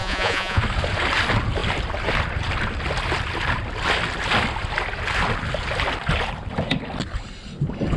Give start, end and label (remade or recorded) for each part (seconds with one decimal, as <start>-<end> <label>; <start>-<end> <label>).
0.0-0.6 remade; 0.6-8.0 recorded